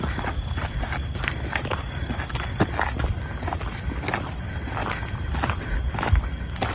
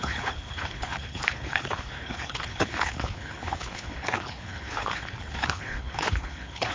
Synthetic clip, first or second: second